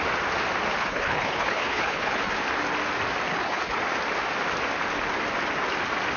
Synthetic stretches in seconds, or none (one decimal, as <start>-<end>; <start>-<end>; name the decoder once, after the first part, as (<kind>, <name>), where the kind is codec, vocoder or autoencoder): 0.8-2.2 (codec, HILCodec); 3.3-3.8